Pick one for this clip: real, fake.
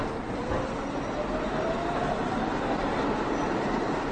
real